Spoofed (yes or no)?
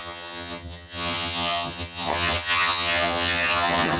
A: yes